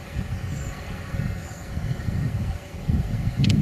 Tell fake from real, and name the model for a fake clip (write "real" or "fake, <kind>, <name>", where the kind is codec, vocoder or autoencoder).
fake, codec, SNAC